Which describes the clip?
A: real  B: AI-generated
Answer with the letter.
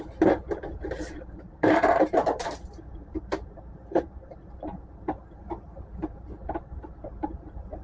B